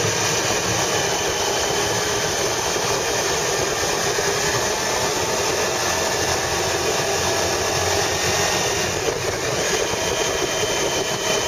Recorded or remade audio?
recorded